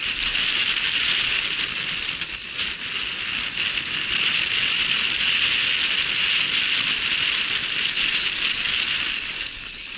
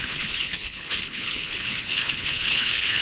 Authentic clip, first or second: first